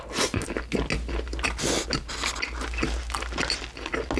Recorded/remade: recorded